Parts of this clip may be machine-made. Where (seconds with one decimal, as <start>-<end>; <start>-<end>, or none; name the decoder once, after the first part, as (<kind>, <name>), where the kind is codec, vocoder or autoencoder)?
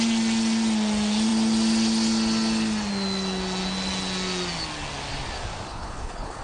5.7-6.4 (codec, HILCodec)